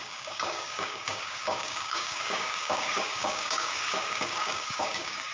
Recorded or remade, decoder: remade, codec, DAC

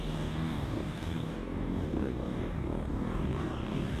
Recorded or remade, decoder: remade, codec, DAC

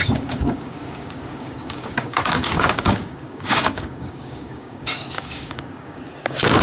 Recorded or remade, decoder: remade, codec, DAC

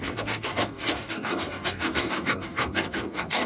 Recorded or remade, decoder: remade, codec, DAC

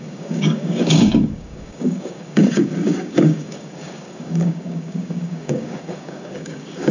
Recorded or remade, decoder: remade, codec, DAC